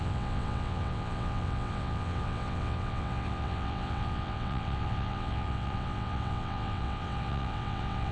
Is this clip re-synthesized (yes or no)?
yes